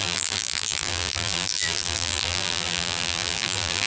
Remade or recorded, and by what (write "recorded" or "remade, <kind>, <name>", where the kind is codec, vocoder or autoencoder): remade, vocoder, BigVGAN v2